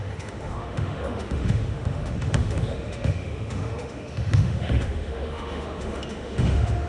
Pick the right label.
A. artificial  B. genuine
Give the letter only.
A